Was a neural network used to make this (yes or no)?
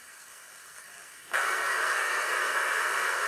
yes